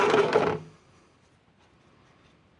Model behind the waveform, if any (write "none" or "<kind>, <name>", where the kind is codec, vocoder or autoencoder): none